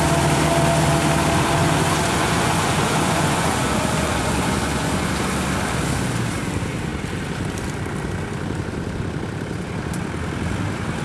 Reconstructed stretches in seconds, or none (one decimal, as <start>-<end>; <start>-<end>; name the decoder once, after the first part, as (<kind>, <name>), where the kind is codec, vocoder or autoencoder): 1.6-5.1 (vocoder, Vocos)